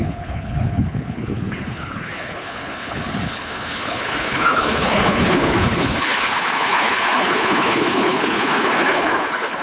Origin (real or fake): fake